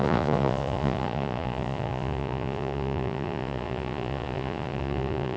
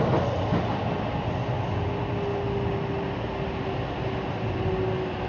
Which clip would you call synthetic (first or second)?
first